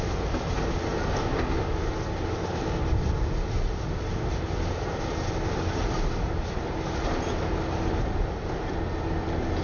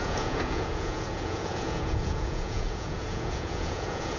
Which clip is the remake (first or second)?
second